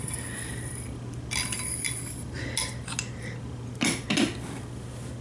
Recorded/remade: recorded